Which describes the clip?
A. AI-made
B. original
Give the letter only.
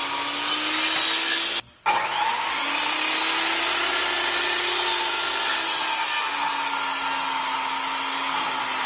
B